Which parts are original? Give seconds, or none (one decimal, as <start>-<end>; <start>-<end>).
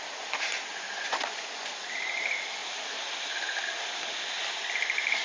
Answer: 0.0-0.7; 1.7-5.2